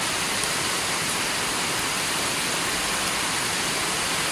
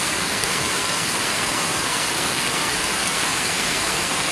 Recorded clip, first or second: first